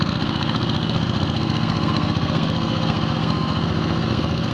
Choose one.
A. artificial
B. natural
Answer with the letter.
A